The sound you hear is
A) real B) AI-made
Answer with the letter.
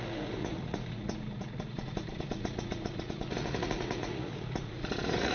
B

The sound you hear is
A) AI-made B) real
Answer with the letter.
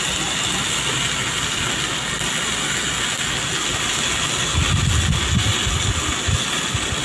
B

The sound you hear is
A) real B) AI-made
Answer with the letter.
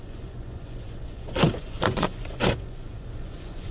B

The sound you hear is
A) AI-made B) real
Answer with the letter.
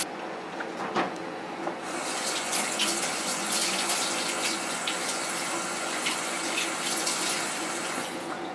A